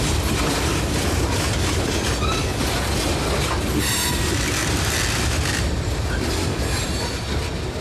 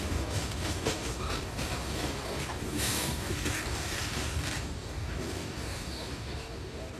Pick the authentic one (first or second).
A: first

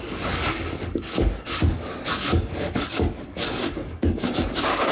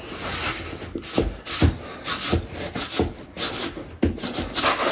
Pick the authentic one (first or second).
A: second